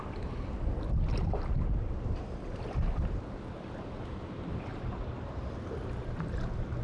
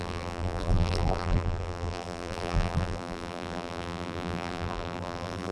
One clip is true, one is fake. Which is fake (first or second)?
second